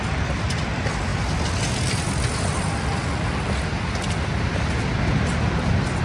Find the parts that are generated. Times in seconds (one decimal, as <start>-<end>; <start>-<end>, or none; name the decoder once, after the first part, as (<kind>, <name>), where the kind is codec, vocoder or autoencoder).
none